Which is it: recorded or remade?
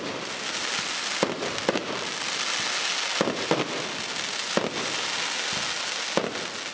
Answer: recorded